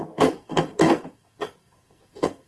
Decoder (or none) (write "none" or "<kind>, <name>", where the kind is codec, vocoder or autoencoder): codec, SNAC